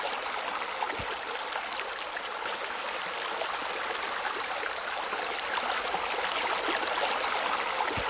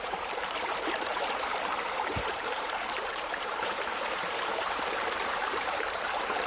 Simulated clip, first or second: second